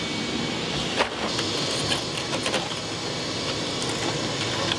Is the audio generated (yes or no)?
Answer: no